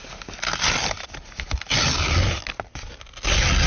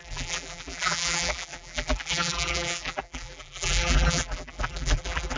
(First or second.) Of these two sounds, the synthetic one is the second